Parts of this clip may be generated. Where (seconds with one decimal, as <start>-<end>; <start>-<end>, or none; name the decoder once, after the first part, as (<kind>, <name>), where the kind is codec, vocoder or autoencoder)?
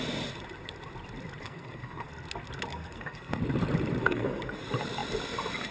1.4-2.1 (codec, SNAC); 2.7-3.4; 4.0-4.6